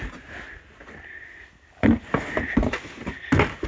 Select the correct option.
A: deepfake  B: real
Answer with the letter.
B